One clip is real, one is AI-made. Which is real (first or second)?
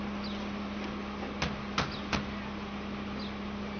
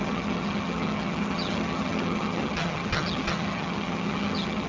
first